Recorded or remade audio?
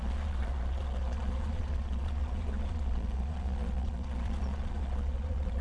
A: remade